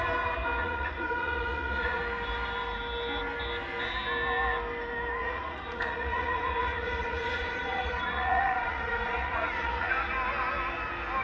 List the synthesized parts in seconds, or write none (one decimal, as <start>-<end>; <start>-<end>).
0.6-2.0; 5.2-9.9